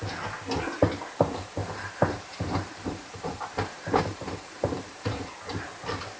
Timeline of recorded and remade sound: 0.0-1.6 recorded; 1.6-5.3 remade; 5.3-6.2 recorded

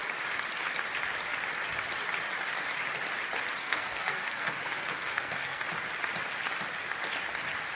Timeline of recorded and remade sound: 0.0-3.6 recorded; 3.6-5.6 remade; 5.6-7.7 recorded